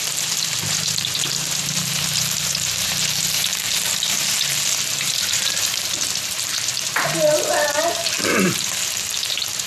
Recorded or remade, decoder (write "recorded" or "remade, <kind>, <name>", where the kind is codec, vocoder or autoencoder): remade, vocoder, BigVGAN v2